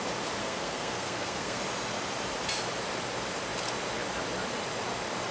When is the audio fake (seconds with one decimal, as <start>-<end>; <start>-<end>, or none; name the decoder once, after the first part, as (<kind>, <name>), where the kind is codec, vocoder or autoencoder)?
0.4-1.6 (codec, SNAC)